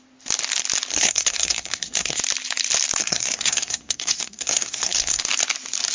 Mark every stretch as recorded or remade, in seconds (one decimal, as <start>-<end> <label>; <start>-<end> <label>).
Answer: 0.0-0.9 recorded; 0.9-2.2 remade; 2.2-3.0 recorded; 3.0-5.2 remade; 5.2-5.9 recorded

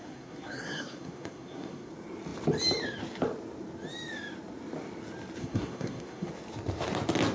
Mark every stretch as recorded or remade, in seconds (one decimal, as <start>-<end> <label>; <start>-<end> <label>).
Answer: 0.0-1.9 remade; 1.9-5.4 recorded; 5.4-6.3 remade; 6.3-7.3 recorded

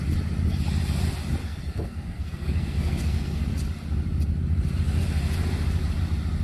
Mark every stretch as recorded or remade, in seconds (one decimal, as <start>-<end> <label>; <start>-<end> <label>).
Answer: 0.0-1.4 recorded; 1.4-3.4 remade; 3.4-6.4 recorded

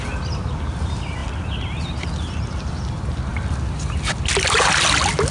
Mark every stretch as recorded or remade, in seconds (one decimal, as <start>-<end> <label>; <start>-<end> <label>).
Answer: 0.0-5.3 recorded

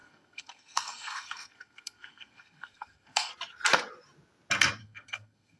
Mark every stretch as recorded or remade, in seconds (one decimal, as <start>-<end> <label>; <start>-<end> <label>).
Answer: 0.0-3.3 remade; 3.3-4.8 recorded; 4.8-5.6 remade

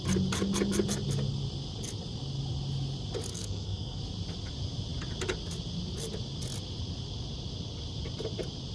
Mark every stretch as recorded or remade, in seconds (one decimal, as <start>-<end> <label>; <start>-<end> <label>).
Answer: 0.0-3.3 recorded; 3.3-4.0 remade; 4.0-8.7 recorded